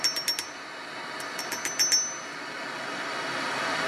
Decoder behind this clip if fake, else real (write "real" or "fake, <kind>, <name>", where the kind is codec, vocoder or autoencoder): real